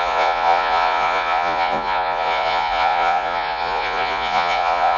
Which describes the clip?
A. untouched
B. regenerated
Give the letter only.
B